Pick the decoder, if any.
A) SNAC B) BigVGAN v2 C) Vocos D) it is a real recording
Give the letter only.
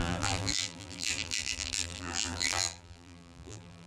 B